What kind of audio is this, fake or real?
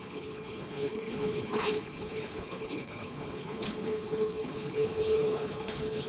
fake